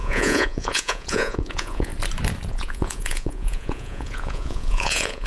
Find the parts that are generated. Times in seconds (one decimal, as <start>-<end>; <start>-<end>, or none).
0.0-1.9; 2.5-5.3